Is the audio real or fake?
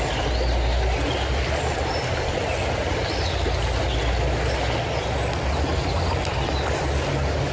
real